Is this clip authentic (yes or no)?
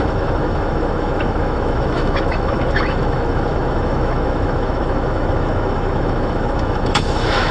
no